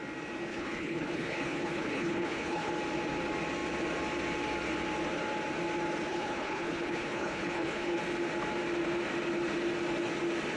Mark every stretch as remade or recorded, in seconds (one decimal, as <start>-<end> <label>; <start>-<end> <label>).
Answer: 0.0-0.5 recorded; 0.5-2.7 remade; 2.7-6.1 recorded; 6.1-8.0 remade; 8.0-10.6 recorded